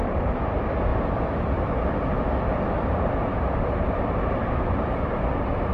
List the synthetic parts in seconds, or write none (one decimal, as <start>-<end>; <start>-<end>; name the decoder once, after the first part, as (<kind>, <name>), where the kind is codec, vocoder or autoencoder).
3.3-5.7 (vocoder, BigVGAN v2)